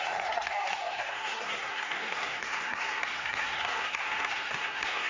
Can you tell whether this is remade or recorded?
remade